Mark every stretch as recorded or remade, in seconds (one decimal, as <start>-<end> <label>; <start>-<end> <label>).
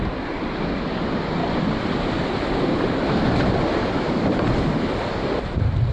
0.0-1.4 recorded; 1.4-4.8 remade; 4.8-5.9 recorded